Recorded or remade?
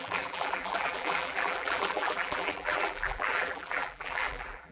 remade